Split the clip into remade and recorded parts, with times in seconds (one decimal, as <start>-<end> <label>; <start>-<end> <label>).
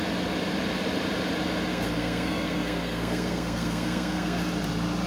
0.0-1.7 recorded; 1.7-4.4 remade; 4.4-5.1 recorded